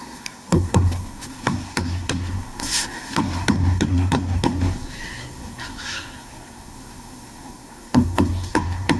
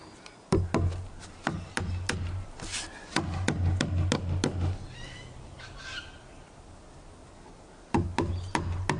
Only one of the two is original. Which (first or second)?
second